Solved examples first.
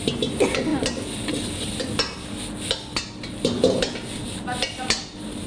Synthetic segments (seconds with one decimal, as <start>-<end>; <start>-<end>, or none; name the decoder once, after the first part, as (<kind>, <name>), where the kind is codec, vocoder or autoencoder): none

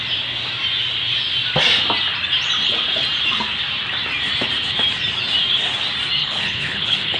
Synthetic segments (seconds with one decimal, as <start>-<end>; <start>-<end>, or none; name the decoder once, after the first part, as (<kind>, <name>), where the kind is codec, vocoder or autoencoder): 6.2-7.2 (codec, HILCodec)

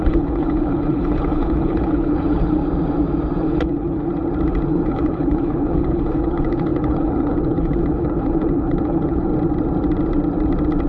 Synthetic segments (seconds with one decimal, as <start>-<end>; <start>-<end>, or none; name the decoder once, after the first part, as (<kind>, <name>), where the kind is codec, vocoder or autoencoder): 0.0-2.6 (codec, HILCodec); 3.4-4.1; 4.7-9.3

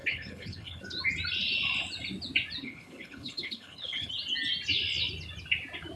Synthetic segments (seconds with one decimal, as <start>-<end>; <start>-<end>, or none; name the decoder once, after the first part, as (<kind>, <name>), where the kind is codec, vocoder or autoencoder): 0.0-0.8 (codec, HILCodec); 2.6-4.1

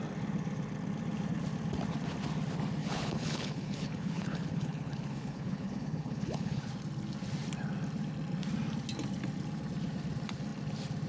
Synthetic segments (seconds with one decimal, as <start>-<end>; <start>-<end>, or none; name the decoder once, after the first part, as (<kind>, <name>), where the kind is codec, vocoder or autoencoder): 2.8-6.7 (codec, HILCodec)